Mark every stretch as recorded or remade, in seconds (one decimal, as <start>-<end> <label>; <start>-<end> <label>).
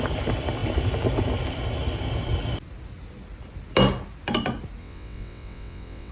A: 0.0-4.8 recorded; 4.8-6.1 remade